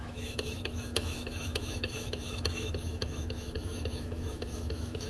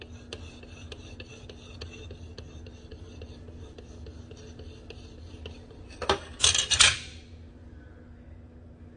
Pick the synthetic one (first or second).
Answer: first